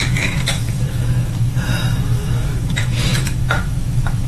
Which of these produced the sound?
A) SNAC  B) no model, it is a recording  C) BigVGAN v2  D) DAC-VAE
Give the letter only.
D